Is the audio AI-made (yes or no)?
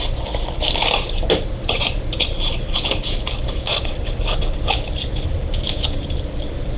no